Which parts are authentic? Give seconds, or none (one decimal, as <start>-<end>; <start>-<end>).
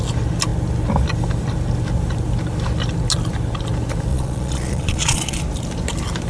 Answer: 0.0-4.1; 5.4-6.3